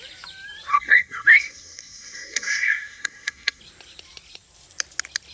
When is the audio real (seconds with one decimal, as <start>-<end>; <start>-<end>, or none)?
0.0-0.7; 3.6-5.3